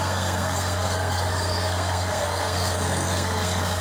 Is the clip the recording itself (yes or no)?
no